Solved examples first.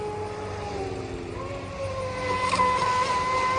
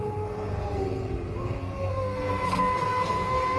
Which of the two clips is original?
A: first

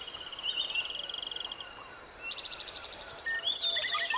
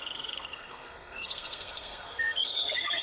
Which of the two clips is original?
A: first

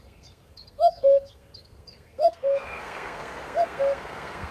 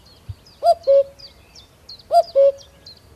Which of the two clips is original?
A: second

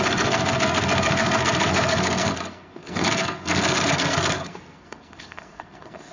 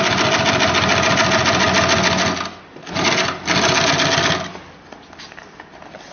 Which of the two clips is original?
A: second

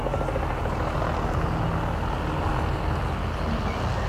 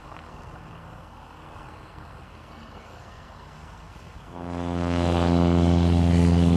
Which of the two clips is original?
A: first